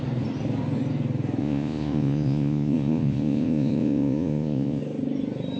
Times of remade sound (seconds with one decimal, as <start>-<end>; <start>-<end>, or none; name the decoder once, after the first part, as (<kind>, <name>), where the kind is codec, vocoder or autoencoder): 1.4-4.8 (vocoder, Vocos)